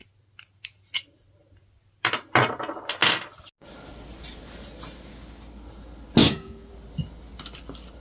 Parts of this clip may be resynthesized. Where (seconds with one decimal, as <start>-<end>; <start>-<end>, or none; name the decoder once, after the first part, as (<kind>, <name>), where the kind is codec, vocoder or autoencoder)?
6.2-6.7 (autoencoder, DAC-VAE)